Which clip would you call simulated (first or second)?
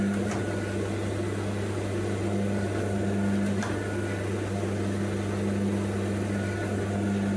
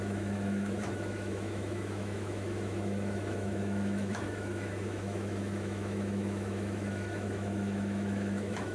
second